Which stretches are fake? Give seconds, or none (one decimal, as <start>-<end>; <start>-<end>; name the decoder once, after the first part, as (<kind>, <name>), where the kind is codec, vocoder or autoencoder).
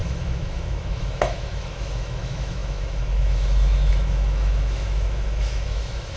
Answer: 0.0-6.2 (autoencoder, DAC-VAE)